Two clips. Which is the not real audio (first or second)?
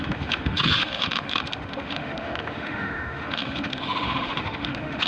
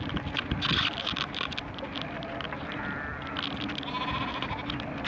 first